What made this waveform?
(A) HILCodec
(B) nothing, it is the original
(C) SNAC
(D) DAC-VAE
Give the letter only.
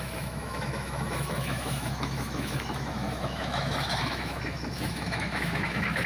D